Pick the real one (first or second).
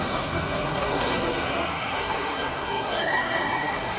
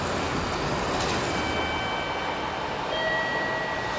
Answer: second